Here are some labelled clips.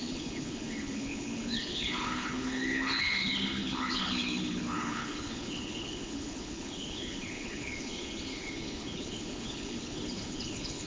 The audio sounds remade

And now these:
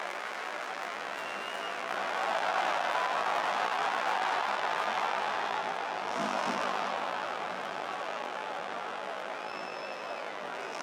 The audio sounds remade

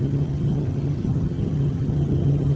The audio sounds remade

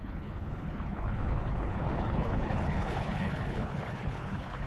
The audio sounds remade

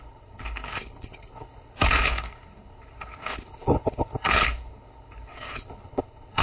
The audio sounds remade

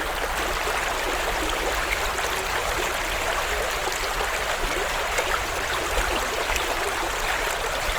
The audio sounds recorded